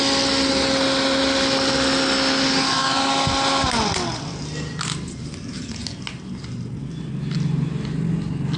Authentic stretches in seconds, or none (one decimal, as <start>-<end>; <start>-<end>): 0.0-8.6